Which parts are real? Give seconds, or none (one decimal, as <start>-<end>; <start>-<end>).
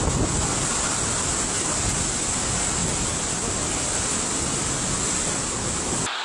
0.0-6.2